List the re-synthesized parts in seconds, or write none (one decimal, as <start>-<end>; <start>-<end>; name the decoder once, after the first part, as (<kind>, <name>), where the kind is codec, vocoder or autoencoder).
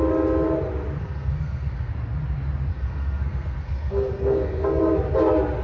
1.0-1.9 (codec, SNAC); 2.7-4.8